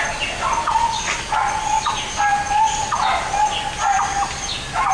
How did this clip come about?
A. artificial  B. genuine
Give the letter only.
B